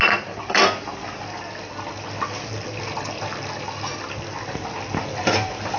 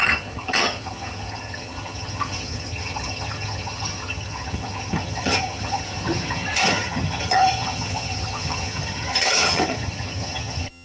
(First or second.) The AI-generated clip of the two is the second